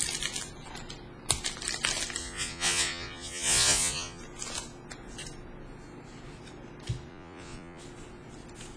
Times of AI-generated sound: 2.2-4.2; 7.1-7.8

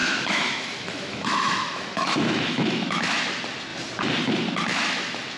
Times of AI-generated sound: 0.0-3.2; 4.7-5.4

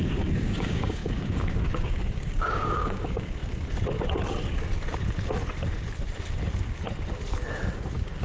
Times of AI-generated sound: 0.0-3.4; 7.7-8.2

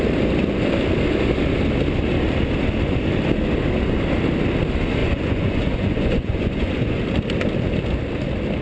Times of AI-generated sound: 5.0-7.0